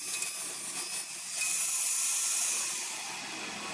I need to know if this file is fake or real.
real